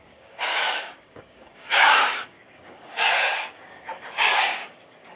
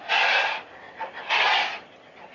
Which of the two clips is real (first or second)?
second